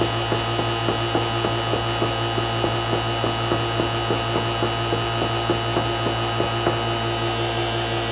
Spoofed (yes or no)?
no